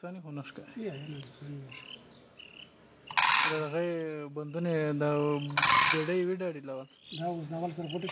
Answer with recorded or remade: recorded